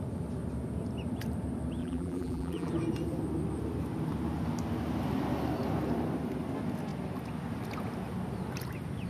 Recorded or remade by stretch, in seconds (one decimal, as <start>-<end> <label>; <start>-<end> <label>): 0.0-1.8 recorded; 1.8-2.7 remade; 2.7-9.1 recorded